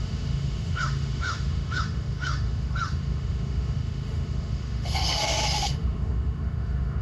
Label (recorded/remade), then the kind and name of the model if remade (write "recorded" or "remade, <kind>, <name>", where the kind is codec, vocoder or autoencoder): remade, autoencoder, DAC-VAE